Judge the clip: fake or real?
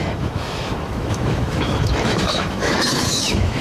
fake